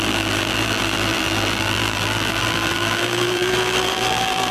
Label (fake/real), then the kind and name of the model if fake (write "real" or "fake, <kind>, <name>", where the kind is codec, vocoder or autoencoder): fake, vocoder, BigVGAN v2